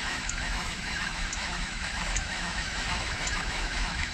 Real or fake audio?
fake